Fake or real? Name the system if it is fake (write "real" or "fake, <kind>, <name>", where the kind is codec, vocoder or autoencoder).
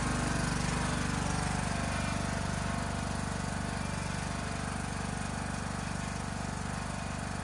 real